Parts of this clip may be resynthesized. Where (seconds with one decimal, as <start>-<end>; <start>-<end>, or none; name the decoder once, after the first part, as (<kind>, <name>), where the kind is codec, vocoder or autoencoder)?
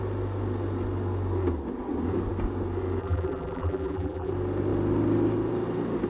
3.0-4.3 (vocoder, BigVGAN v2)